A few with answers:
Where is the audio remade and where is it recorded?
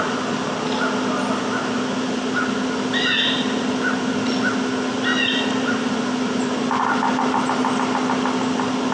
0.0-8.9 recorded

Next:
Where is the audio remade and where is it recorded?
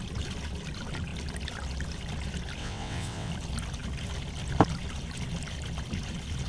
0.0-2.6 recorded; 2.6-3.3 remade; 3.3-6.5 recorded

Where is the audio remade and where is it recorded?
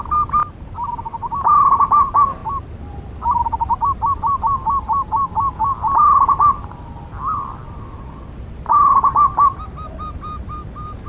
0.0-11.1 recorded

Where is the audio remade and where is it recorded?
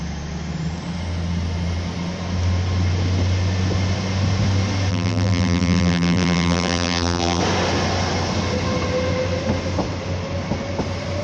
0.0-4.9 recorded; 4.9-7.4 remade; 7.4-11.2 recorded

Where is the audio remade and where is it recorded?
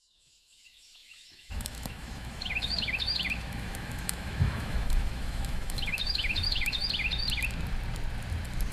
0.0-6.8 remade; 6.8-8.7 recorded